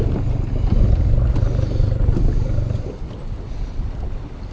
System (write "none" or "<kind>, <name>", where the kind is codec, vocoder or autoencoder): none